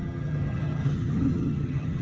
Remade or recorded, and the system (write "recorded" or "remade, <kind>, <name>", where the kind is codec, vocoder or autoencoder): remade, vocoder, HiFi-GAN